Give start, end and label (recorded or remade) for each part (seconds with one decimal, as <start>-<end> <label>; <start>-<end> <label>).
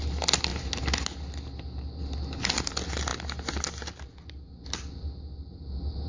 0.0-6.1 recorded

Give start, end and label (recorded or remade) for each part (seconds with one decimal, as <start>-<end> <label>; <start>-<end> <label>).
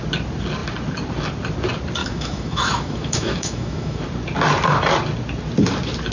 0.0-2.0 recorded; 2.0-4.0 remade; 4.0-6.1 recorded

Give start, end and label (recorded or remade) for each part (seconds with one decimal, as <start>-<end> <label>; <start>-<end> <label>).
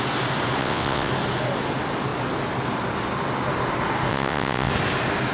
0.0-0.6 recorded; 0.6-1.1 remade; 1.1-4.1 recorded; 4.1-4.7 remade; 4.7-5.3 recorded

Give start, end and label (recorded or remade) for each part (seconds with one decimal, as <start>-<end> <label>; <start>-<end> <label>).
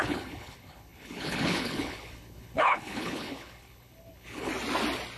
0.0-4.5 remade; 4.5-5.2 recorded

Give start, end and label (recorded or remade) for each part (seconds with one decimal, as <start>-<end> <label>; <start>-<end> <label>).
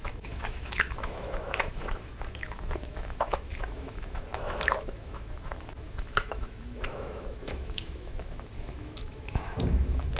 0.0-10.2 remade